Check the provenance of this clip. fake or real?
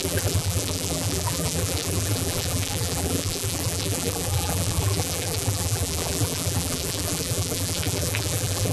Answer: fake